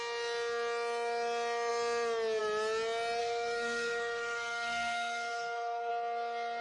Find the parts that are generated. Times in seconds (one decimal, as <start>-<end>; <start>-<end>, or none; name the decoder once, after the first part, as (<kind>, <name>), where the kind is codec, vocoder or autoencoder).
3.2-5.9 (codec, SNAC)